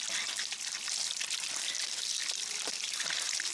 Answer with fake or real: fake